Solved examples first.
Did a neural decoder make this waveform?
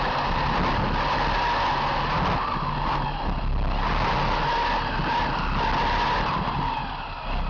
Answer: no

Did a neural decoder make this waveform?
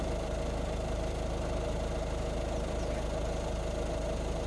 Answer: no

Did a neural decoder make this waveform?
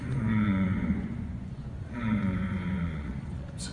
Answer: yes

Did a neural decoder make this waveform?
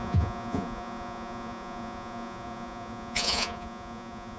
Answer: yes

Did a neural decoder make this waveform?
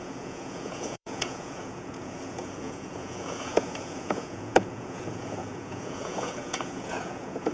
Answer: yes